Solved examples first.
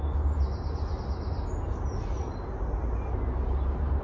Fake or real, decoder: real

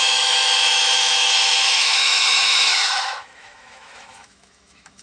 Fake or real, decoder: fake, autoencoder, DAC-VAE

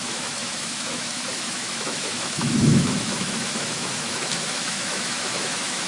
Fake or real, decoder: fake, autoencoder, DAC-VAE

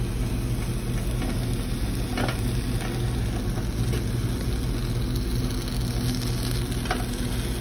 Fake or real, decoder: real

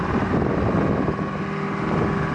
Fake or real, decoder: real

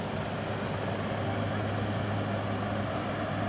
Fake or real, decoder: real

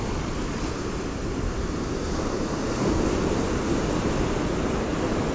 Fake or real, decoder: real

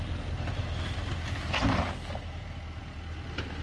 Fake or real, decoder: real